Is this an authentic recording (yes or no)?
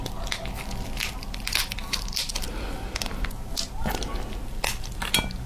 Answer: yes